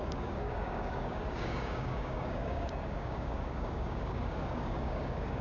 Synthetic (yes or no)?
yes